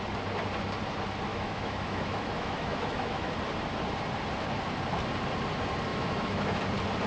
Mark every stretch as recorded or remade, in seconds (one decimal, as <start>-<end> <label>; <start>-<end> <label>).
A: 0.0-1.3 recorded; 1.3-3.3 remade; 3.3-5.9 recorded; 5.9-6.6 remade; 6.6-7.1 recorded